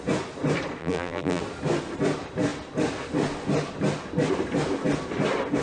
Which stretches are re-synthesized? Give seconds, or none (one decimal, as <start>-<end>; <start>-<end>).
0.8-1.4